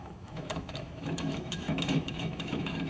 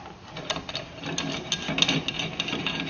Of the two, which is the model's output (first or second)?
first